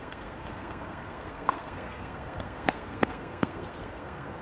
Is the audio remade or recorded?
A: remade